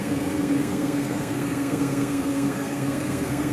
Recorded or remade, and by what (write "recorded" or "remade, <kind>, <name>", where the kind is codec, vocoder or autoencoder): remade, codec, SNAC